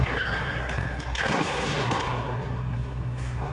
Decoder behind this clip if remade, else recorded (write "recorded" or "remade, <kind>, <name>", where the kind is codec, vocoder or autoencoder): remade, codec, SNAC